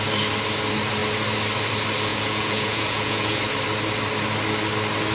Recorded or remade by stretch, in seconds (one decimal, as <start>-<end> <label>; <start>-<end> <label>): 0.0-2.1 recorded; 2.1-3.4 remade; 3.4-5.1 recorded